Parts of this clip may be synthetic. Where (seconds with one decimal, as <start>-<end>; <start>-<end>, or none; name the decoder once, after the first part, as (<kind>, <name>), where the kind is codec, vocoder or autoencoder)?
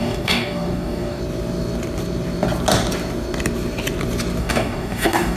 0.0-1.2 (codec, DAC); 4.4-5.4